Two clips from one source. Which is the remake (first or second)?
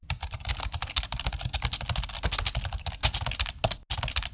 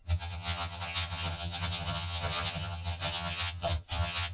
second